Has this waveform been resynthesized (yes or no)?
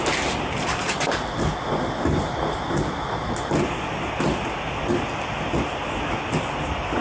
no